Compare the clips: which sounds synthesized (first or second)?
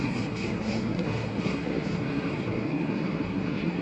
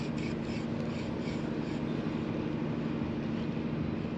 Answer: first